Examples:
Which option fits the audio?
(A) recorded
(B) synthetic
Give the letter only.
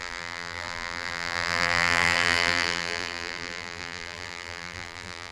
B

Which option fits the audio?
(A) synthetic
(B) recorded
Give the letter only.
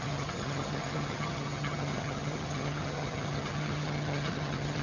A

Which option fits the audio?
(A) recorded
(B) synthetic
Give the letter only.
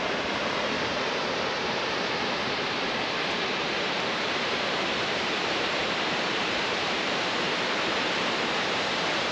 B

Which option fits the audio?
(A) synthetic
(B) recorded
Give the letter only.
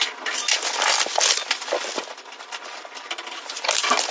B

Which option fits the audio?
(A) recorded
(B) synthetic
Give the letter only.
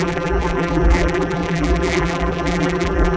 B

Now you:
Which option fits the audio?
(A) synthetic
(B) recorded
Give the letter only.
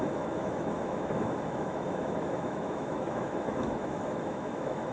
A